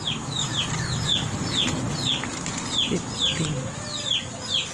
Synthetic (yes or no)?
no